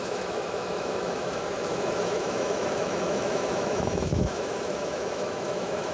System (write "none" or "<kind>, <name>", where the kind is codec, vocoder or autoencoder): autoencoder, DAC-VAE